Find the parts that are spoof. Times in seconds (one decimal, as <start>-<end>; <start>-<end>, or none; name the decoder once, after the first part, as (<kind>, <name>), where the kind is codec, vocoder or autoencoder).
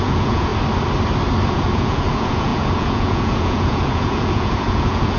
0.0-0.5 (vocoder, Vocos); 1.5-5.2